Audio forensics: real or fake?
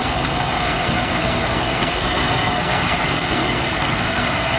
fake